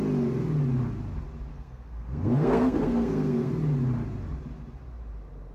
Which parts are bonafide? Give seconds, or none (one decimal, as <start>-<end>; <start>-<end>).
0.0-1.5; 3.5-5.5